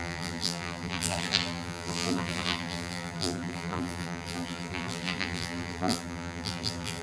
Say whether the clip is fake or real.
fake